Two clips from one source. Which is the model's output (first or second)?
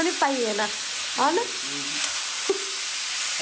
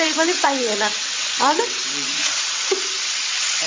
second